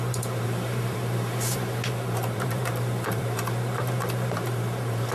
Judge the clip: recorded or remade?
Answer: remade